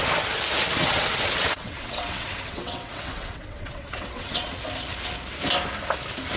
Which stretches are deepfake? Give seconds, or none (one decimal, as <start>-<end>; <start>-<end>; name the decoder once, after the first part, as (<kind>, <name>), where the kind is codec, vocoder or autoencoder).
0.8-4.6 (vocoder, WaveNeXt)